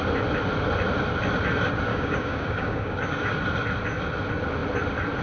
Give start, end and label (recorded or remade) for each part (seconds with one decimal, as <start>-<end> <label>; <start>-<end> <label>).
0.0-1.9 recorded; 1.9-3.3 remade; 3.3-5.2 recorded